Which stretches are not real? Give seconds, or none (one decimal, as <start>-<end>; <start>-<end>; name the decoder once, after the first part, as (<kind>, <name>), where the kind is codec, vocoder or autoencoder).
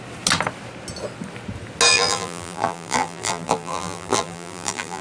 1.9-5.0 (vocoder, BigVGAN v2)